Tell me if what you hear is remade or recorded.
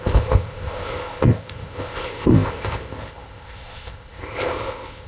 remade